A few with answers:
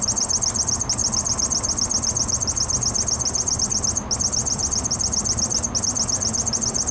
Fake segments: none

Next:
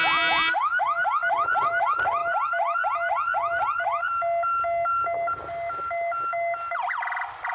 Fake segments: none

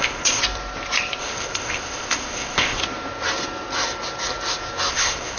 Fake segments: 0.0-0.4 (codec, ZipCodec); 1.2-2.8; 4.9-5.4